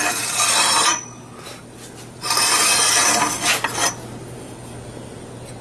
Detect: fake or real real